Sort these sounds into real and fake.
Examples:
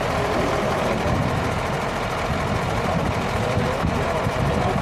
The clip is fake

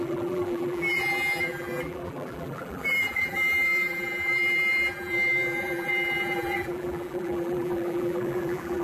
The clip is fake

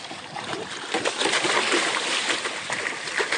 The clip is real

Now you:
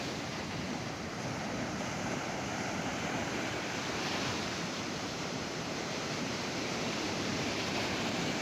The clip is fake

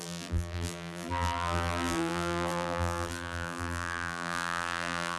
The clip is fake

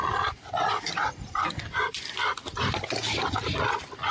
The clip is fake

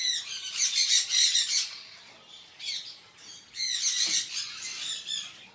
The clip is real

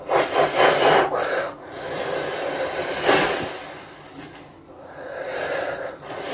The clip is real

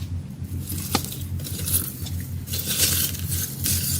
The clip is real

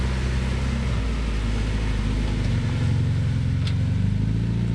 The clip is real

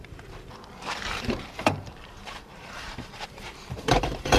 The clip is fake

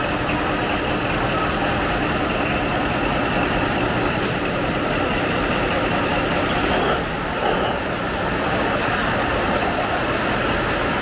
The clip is real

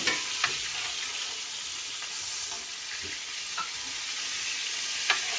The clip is real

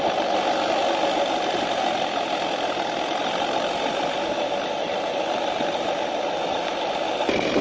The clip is fake